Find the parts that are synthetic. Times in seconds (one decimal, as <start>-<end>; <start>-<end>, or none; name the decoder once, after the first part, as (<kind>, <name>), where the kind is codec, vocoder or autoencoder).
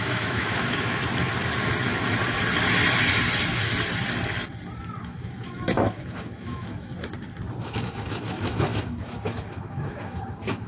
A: 0.0-1.0 (autoencoder, DAC-VAE); 5.0-6.9; 7.6-10.7